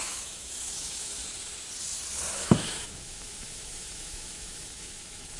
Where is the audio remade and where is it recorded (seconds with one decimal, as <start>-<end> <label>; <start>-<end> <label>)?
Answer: 0.0-1.2 remade; 1.2-2.3 recorded; 2.3-5.4 remade